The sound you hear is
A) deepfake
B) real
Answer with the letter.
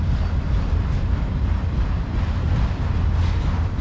B